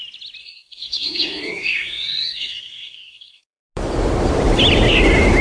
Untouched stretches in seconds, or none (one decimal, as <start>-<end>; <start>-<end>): 0.0-0.4; 3.6-5.4